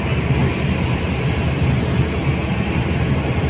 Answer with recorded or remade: recorded